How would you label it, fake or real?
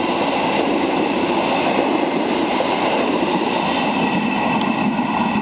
real